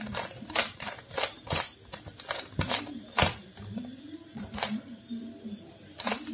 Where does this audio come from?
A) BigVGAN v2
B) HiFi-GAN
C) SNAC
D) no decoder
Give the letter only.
A